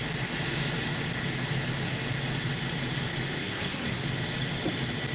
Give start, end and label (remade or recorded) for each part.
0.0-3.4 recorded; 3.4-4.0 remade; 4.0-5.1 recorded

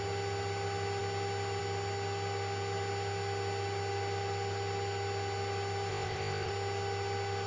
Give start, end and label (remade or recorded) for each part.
0.0-5.9 recorded; 5.9-6.5 remade; 6.5-7.5 recorded

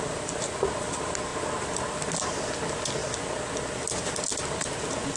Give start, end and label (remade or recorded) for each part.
0.0-5.2 recorded

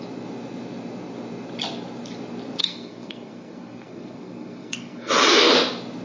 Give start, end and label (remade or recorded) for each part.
0.0-2.6 recorded; 2.6-5.1 remade; 5.1-6.0 recorded